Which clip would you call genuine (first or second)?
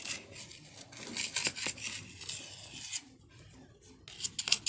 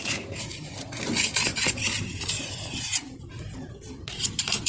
first